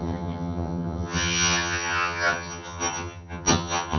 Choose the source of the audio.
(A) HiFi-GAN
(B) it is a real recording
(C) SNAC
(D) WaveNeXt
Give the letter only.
A